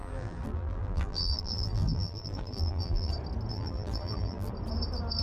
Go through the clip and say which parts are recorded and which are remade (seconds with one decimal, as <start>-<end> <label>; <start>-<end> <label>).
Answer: 0.0-3.1 remade; 3.1-3.5 recorded; 3.5-4.5 remade; 4.5-5.2 recorded